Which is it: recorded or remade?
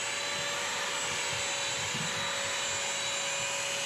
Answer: recorded